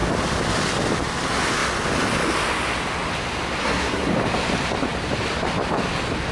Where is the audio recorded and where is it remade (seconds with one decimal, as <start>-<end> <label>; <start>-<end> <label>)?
0.0-3.6 recorded; 3.6-4.1 remade; 4.1-6.3 recorded